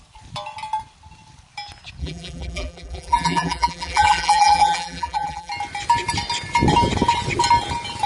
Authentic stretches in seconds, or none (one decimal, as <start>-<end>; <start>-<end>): 0.0-2.0; 5.5-8.1